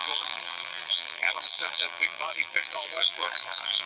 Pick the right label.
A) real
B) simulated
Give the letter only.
B